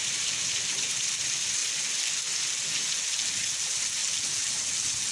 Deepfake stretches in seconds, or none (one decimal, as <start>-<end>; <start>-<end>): 0.0-1.6; 3.2-4.0